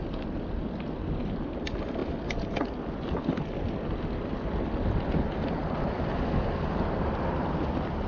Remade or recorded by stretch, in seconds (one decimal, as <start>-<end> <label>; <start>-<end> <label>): 0.0-8.1 recorded